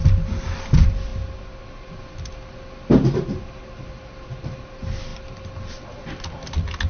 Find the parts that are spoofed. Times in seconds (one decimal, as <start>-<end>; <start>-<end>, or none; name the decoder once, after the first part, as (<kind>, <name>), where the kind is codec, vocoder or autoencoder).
none